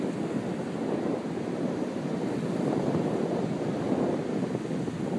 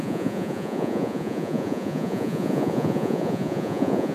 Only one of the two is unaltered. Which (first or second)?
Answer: first